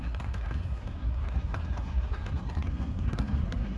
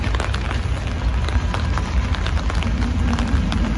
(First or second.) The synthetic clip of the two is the first